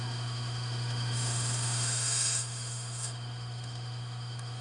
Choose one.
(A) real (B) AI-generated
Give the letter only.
B